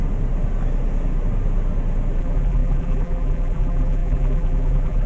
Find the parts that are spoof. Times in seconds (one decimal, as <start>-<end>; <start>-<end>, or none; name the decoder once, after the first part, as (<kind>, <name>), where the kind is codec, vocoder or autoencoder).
2.2-5.1 (vocoder, BigVGAN v2)